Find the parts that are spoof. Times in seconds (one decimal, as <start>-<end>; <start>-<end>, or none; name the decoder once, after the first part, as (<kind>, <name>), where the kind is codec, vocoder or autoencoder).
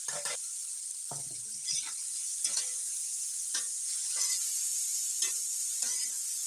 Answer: 2.3-5.2 (vocoder, Vocos); 5.9-6.5